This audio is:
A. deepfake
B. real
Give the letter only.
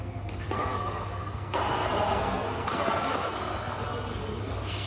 A